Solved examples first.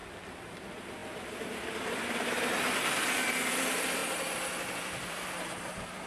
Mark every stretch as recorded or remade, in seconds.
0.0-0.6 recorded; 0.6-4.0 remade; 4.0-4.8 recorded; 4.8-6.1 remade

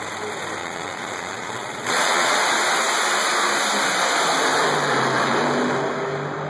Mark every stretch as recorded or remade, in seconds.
0.0-0.6 recorded; 0.6-2.4 remade; 2.4-6.5 recorded

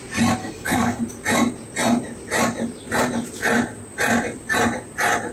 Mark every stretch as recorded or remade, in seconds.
0.0-0.4 recorded; 0.4-1.0 remade; 1.0-5.3 recorded

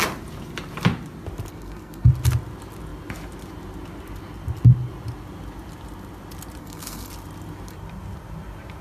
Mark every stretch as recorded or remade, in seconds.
0.0-1.5 recorded; 1.5-2.1 remade; 2.1-6.6 recorded; 6.6-7.1 remade; 7.1-8.8 recorded

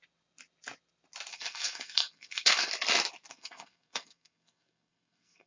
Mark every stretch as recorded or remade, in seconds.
0.0-1.3 recorded; 1.3-2.7 remade; 2.7-3.3 recorded; 3.3-5.5 remade